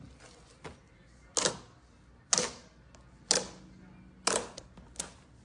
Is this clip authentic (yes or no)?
yes